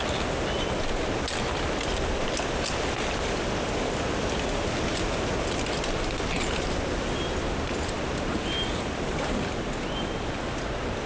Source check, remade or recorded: recorded